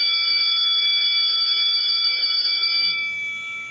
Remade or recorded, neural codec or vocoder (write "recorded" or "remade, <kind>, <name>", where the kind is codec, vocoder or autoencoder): recorded